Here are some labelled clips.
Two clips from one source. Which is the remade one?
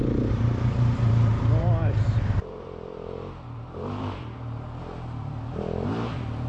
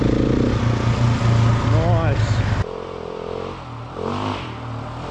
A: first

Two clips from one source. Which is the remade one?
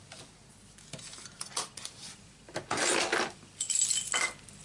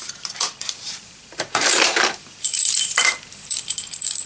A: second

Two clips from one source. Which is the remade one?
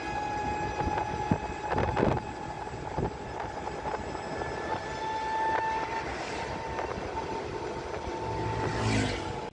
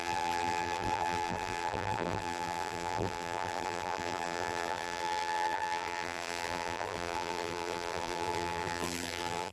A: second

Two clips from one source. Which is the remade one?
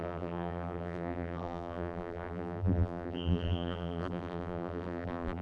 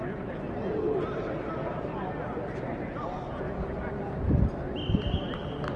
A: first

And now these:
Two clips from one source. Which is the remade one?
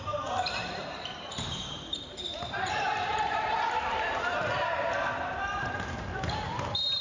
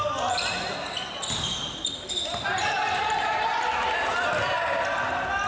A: first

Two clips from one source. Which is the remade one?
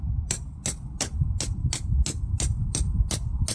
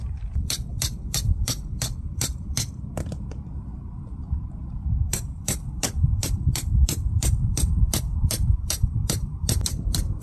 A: second